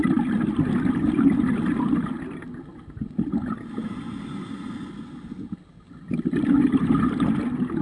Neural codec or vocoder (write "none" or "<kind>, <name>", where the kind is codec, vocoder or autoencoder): none